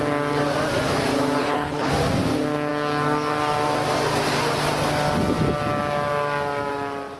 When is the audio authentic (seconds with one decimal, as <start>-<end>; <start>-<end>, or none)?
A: 0.0-1.4; 1.9-7.2